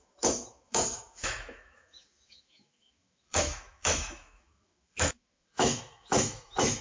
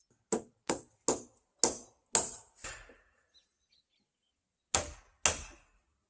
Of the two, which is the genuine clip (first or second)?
second